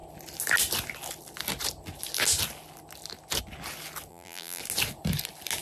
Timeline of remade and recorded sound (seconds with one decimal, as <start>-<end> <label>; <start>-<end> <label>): 0.0-4.1 recorded; 4.1-4.6 remade; 4.6-5.6 recorded